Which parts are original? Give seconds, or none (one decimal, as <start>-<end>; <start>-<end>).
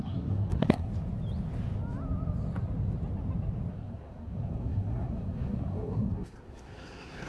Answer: 0.9-3.7